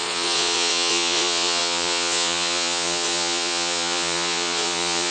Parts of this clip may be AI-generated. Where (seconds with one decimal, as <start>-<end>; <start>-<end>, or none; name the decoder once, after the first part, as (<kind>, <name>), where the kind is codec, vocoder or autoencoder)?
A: 0.0-5.1 (vocoder, Vocos)